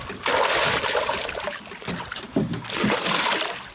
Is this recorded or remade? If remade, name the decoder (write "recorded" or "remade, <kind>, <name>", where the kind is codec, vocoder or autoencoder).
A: recorded